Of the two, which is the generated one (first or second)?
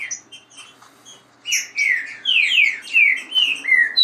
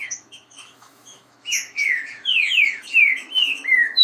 second